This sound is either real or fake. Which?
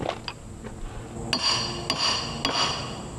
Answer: real